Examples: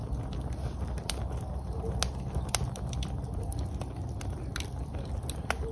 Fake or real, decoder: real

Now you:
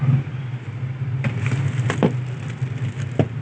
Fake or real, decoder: real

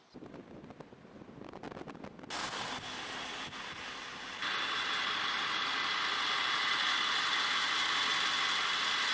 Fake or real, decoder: real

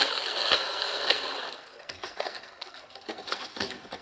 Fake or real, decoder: fake, codec, SNAC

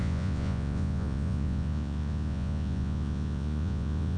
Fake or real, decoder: fake, vocoder, Vocos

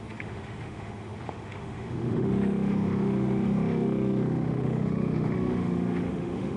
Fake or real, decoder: fake, autoencoder, DAC-VAE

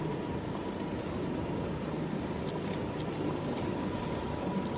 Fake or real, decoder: real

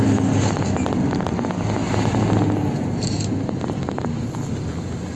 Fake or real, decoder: real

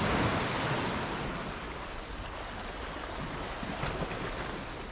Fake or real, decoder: real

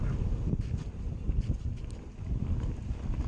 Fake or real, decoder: real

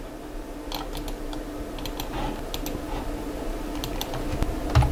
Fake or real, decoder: real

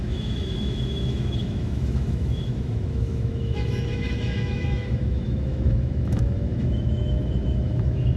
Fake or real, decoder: fake, autoencoder, DAC-VAE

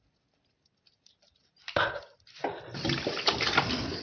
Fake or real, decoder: real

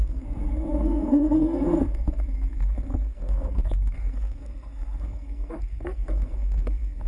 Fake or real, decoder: fake, codec, SNAC